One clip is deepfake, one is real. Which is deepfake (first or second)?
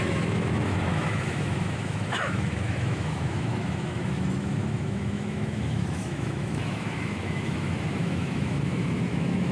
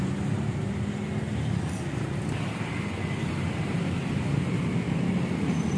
first